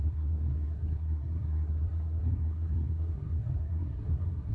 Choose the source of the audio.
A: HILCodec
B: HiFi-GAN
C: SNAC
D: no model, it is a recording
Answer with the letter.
C